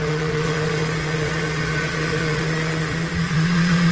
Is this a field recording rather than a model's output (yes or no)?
no